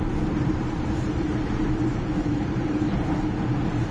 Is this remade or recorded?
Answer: remade